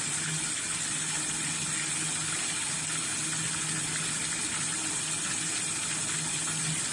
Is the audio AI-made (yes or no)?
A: no